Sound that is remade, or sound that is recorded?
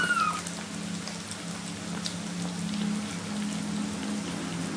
recorded